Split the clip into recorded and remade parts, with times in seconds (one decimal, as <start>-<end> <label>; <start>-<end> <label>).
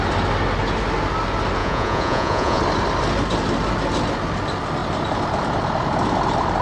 0.0-1.6 recorded; 1.6-2.6 remade; 2.6-6.6 recorded